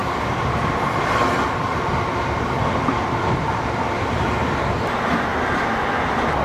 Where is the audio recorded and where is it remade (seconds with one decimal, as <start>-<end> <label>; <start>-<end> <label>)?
0.0-6.4 recorded